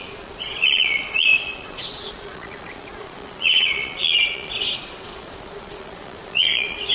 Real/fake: fake